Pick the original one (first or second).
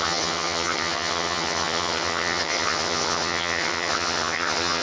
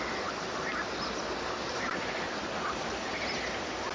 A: second